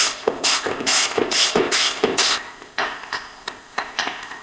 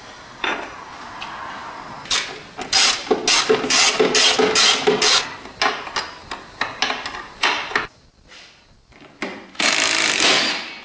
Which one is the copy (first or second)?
first